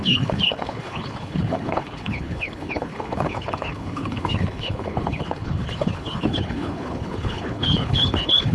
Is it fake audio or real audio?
fake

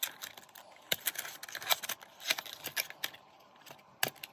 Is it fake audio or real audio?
real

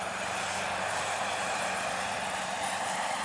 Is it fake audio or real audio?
fake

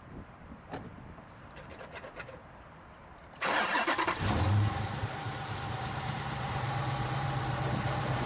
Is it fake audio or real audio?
fake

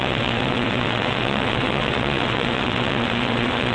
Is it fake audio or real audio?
fake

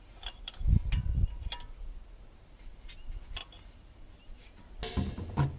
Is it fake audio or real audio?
real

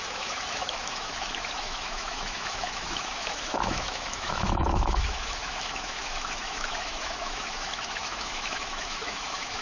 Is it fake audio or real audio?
fake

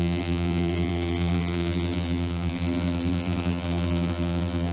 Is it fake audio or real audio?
fake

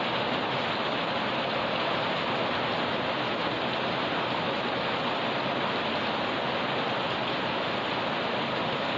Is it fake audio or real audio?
real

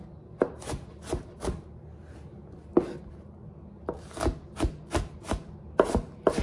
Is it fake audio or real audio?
real